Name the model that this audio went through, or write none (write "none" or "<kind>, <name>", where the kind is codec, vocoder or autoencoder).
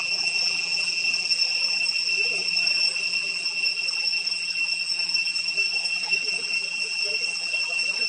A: vocoder, BigVGAN v2